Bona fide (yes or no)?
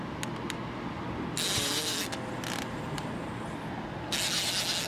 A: yes